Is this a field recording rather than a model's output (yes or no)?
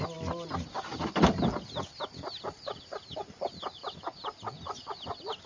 yes